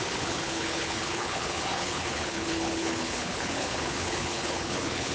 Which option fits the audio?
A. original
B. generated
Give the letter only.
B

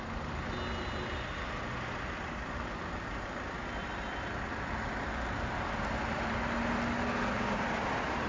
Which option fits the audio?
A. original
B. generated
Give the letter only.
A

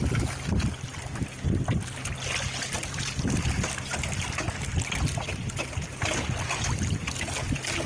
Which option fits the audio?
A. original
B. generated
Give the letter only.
A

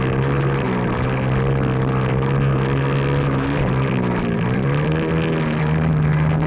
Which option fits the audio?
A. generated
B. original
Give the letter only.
B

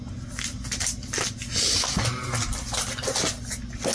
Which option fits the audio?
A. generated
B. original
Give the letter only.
B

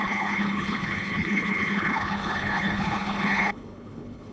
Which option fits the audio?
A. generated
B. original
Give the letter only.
A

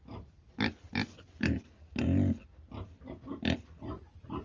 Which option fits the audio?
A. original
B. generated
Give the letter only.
A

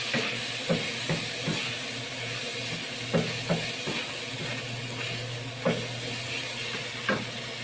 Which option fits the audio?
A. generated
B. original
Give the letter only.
B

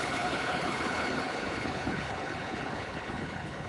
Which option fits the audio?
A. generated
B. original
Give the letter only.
A